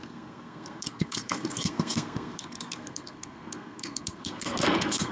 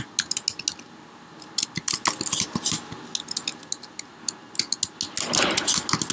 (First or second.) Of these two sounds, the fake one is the first